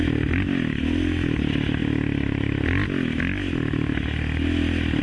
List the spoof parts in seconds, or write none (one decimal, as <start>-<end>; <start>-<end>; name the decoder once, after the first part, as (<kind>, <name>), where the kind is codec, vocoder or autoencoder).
none